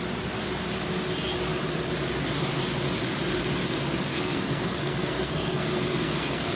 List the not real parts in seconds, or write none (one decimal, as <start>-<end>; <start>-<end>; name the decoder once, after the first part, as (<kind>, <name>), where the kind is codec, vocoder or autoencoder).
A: 4.1-6.6 (codec, SNAC)

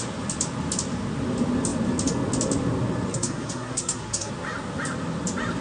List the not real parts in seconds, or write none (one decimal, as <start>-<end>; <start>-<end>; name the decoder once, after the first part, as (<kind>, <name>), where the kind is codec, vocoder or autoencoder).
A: 3.1-4.3 (codec, SNAC)